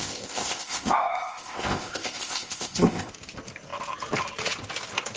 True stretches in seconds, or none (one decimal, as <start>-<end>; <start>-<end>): 3.1-5.2